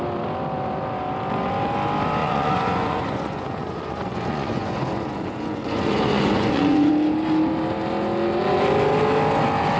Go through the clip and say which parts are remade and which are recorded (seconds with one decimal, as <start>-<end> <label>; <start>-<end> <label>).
0.0-2.2 recorded; 2.2-6.9 remade; 6.9-9.8 recorded